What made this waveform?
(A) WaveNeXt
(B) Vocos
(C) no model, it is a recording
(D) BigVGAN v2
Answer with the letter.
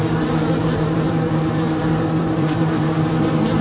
D